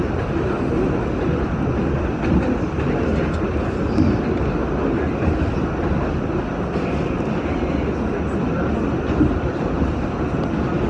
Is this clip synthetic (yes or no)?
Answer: no